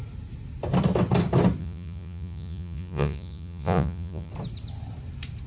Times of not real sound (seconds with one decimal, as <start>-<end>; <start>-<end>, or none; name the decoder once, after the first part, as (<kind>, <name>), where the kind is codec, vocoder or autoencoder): 1.6-4.3 (vocoder, Vocos)